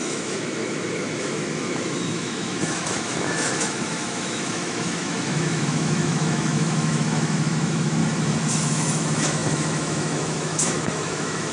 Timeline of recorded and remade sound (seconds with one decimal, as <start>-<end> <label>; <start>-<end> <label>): 0.0-8.0 remade; 8.0-8.5 recorded; 8.5-11.5 remade